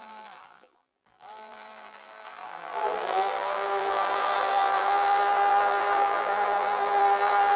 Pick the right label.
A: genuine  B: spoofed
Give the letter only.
B